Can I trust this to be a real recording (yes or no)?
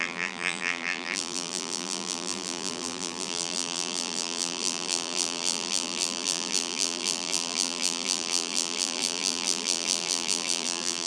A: no